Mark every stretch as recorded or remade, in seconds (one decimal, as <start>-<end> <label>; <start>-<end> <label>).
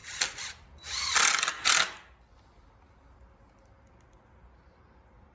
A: 0.0-5.3 recorded